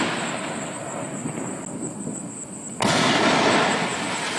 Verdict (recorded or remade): recorded